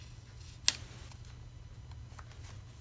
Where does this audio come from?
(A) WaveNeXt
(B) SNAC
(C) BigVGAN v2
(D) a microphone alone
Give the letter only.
D